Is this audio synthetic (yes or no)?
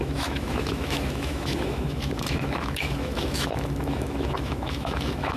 yes